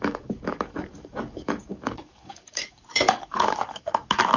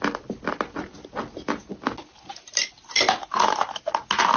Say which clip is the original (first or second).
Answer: second